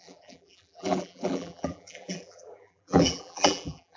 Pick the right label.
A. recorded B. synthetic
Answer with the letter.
B